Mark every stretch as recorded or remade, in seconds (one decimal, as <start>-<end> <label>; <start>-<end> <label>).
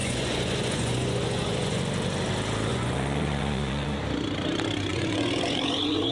0.0-1.8 remade; 1.8-2.7 recorded; 2.7-4.0 remade; 4.0-4.9 recorded; 4.9-6.1 remade